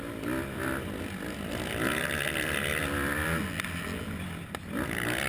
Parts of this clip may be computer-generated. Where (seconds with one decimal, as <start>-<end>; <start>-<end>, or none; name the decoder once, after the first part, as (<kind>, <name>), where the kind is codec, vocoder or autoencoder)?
none